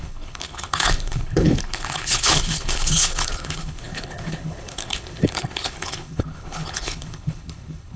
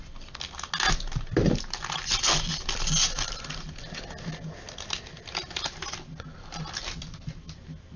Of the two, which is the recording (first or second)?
second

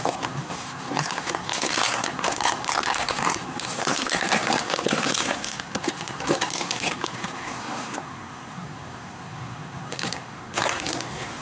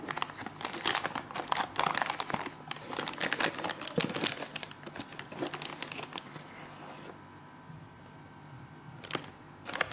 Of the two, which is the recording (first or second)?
second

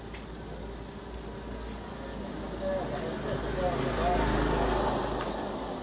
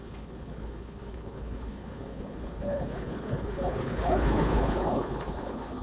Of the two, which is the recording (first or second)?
first